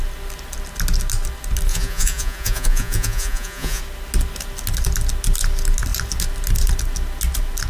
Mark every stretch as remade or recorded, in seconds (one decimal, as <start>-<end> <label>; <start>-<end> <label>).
0.0-1.7 recorded; 1.7-3.8 remade; 3.8-7.7 recorded